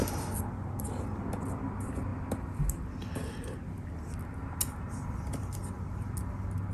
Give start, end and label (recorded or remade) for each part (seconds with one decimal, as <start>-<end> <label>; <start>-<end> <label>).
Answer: 0.0-6.7 recorded